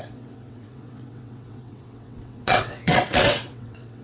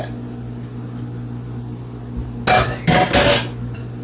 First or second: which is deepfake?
first